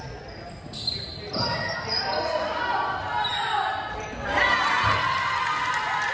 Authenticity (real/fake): real